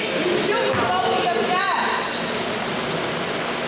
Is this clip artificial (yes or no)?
no